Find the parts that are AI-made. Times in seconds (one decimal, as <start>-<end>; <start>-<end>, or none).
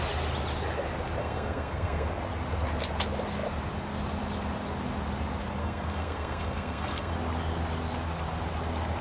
1.2-2.1; 5.6-7.1